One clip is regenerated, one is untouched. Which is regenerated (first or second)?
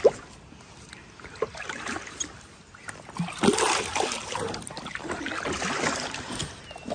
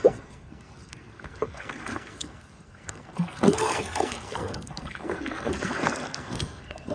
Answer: second